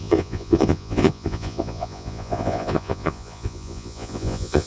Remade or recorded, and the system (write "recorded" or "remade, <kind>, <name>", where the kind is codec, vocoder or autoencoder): remade, vocoder, Vocos